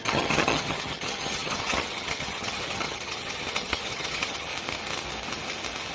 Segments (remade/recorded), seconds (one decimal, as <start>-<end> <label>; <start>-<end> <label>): 0.0-4.5 remade; 4.5-5.9 recorded